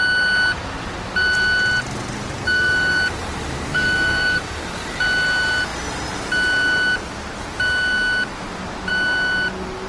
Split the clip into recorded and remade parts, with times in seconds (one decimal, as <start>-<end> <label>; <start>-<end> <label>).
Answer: 0.0-2.4 recorded; 2.4-3.0 remade; 3.0-3.7 recorded; 3.7-4.4 remade; 4.4-9.9 recorded